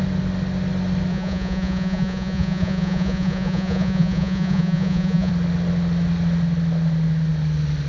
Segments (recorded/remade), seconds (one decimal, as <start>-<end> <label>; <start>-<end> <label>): 0.0-1.1 recorded; 1.1-5.3 remade; 5.3-7.9 recorded